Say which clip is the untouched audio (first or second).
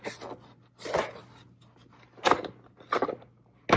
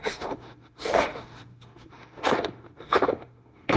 first